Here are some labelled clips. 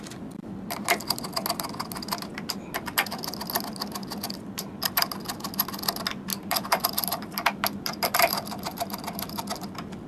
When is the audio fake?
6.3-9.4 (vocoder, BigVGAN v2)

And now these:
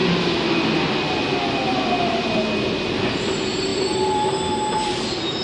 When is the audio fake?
3.7-4.5 (vocoder, BigVGAN v2)

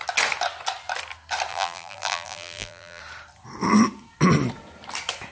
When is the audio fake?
1.5-3.0 (vocoder, BigVGAN v2)

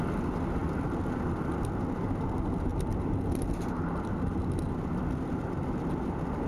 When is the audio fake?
none